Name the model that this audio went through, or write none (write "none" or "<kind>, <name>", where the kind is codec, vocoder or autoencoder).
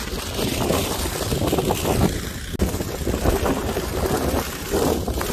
none